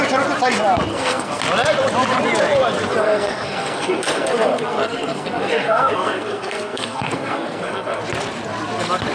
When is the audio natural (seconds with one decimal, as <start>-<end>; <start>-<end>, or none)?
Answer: 0.0-0.9; 1.4-3.0; 8.0-9.1